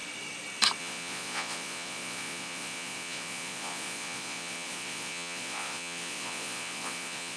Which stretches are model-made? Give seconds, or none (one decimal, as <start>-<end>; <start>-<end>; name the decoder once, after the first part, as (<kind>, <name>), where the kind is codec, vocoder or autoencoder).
0.8-7.4 (vocoder, Vocos)